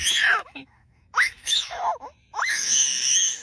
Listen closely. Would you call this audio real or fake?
fake